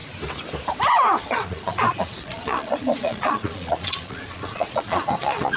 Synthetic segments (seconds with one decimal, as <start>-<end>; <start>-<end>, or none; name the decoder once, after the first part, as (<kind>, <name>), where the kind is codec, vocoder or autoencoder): 1.2-5.6 (vocoder, Vocos)